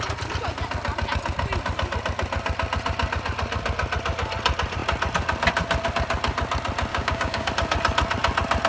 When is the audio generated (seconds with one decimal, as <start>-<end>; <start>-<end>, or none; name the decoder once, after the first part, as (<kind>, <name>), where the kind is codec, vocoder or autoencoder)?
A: 6.9-7.5 (codec, DAC)